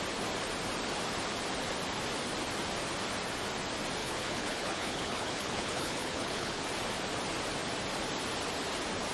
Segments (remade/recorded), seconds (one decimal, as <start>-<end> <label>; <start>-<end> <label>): 0.0-4.0 recorded; 4.0-6.6 remade; 6.6-9.1 recorded